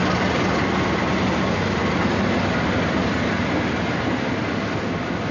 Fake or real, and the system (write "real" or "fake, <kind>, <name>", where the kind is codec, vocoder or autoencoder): real